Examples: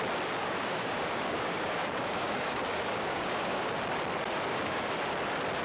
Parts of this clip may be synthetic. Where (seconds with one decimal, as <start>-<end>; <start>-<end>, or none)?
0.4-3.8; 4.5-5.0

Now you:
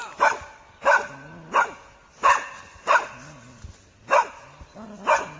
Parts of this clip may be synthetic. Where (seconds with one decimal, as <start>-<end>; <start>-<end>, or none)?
0.0-0.7

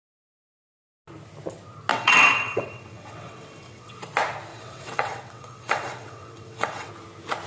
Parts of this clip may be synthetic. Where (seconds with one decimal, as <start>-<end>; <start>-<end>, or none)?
1.9-4.0; 4.5-6.9

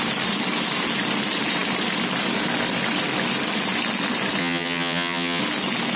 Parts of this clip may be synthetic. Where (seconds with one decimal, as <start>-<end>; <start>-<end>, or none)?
4.4-5.4

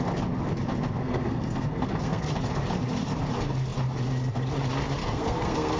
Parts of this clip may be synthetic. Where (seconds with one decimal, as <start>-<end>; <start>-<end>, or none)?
1.0-2.2; 5.0-5.8

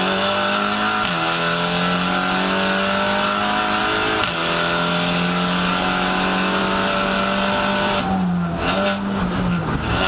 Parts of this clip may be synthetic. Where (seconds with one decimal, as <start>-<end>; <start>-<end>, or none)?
9.6-10.1

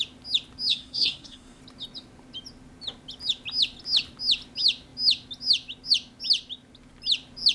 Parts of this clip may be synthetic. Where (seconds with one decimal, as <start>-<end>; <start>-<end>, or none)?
0.7-1.6